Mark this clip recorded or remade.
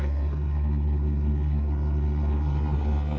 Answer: remade